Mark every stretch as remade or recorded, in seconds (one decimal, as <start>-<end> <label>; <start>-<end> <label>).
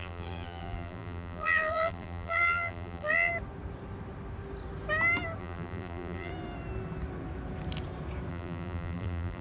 0.0-3.3 remade; 3.3-5.4 recorded; 5.4-6.3 remade; 6.3-8.3 recorded; 8.3-9.4 remade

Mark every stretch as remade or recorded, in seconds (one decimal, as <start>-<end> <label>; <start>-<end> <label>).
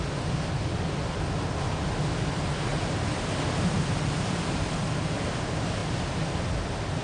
0.0-7.0 recorded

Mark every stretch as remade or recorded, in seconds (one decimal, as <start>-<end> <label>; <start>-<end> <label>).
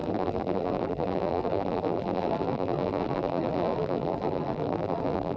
0.0-5.4 remade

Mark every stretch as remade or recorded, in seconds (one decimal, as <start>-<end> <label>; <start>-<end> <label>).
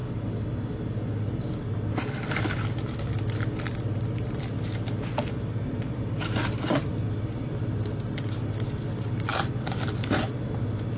0.0-9.3 recorded; 9.3-10.0 remade; 10.0-11.0 recorded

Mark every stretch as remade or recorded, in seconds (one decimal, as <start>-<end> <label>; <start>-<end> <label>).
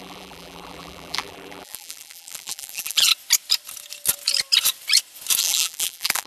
0.0-3.1 remade; 3.1-5.4 recorded; 5.4-6.3 remade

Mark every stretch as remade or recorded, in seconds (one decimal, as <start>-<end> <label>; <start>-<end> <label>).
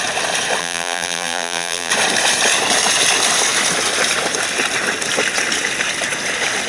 0.0-0.6 recorded; 0.6-1.9 remade; 1.9-6.7 recorded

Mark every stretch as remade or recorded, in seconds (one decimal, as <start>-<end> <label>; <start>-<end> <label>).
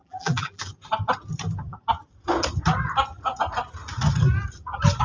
0.0-0.6 remade; 0.6-5.0 recorded